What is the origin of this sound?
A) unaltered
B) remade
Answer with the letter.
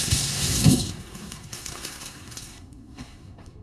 B